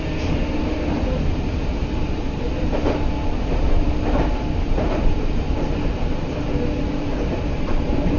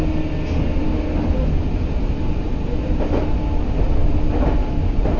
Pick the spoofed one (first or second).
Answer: first